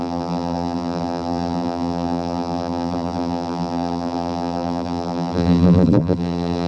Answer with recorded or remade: remade